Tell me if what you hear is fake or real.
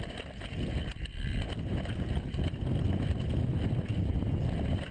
real